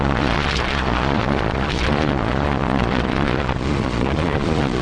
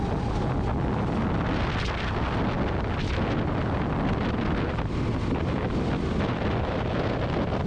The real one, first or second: second